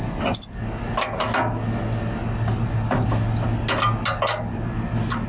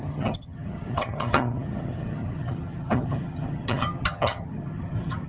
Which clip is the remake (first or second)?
second